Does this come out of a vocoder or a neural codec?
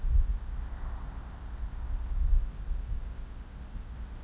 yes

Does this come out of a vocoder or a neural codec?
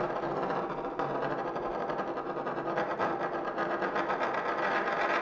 no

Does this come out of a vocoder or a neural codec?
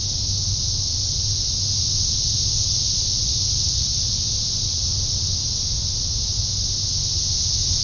no